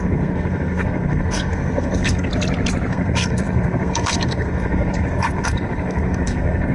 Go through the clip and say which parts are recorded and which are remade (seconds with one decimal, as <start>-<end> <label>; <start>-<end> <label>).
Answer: 0.0-2.3 remade; 2.3-2.9 recorded; 2.9-6.7 remade

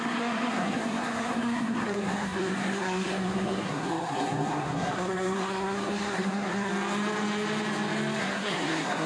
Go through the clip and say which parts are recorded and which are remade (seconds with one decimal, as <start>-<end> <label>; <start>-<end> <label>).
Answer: 0.0-6.7 remade; 6.7-8.2 recorded; 8.2-9.1 remade

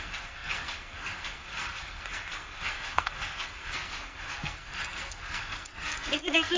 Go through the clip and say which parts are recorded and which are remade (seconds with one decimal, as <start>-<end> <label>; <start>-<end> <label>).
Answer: 0.0-6.6 remade

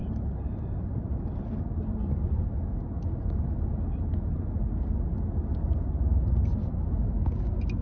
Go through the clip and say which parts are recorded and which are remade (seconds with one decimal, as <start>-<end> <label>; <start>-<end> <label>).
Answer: 0.0-7.8 recorded

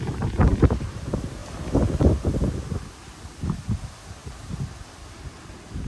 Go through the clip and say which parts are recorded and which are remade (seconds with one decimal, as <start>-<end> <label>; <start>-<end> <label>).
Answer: 0.0-5.9 recorded

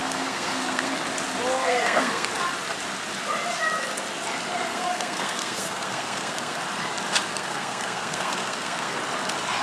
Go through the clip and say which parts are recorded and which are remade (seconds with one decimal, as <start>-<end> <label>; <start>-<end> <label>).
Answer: 0.0-0.9 remade; 0.9-1.5 recorded; 1.5-2.3 remade; 2.3-4.5 recorded; 4.5-6.6 remade; 6.6-7.3 recorded; 7.3-9.0 remade; 9.0-9.6 recorded